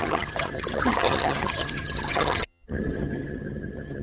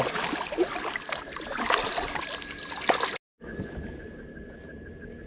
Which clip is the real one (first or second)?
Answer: second